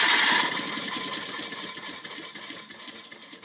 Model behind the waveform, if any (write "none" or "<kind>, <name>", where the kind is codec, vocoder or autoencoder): none